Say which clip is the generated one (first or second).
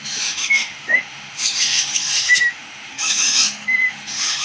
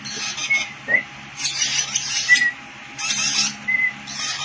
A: first